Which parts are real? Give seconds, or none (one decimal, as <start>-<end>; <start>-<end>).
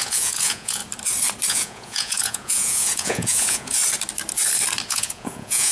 0.8-1.5; 3.8-4.9